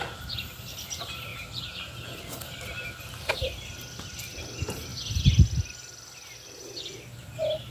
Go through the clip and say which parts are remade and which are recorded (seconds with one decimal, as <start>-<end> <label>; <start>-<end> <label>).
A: 0.0-1.3 recorded; 1.3-2.4 remade; 2.4-4.9 recorded; 4.9-5.4 remade; 5.4-7.7 recorded